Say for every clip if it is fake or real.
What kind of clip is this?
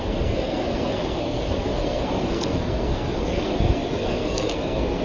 fake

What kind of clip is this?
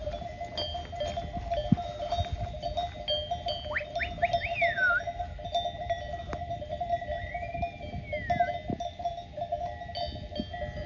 real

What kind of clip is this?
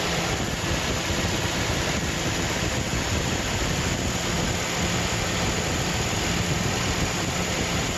real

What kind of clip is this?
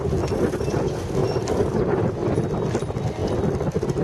real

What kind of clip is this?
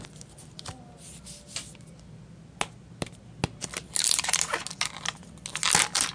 real